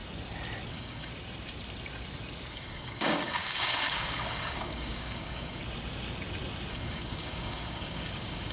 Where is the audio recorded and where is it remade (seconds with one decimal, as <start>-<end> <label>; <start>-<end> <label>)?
0.0-0.7 recorded; 0.7-1.1 remade; 1.1-2.5 recorded; 2.5-5.6 remade; 5.6-6.7 recorded; 6.7-8.5 remade